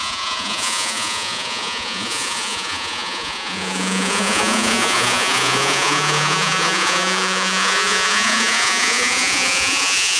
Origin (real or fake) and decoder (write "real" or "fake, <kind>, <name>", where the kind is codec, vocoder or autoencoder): fake, vocoder, Vocos